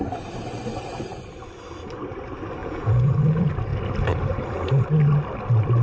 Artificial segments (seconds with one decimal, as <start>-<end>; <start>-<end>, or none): 2.6-3.1